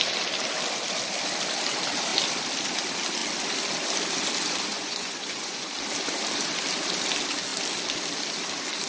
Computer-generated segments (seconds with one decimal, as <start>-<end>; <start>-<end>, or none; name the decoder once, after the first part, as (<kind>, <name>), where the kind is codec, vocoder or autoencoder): 4.7-5.7 (vocoder, Vocos)